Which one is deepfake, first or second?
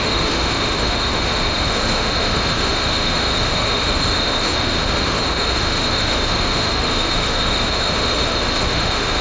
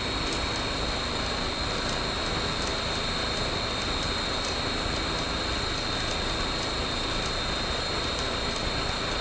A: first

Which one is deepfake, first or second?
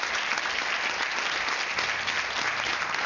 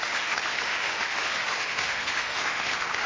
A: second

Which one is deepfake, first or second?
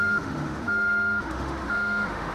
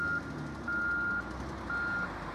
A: first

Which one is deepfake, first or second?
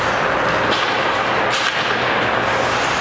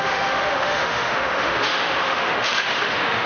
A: second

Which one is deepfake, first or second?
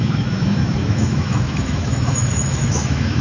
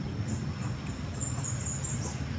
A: first